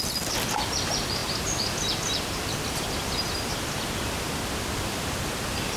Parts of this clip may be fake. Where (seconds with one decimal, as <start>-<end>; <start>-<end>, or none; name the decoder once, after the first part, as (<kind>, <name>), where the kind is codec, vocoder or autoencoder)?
none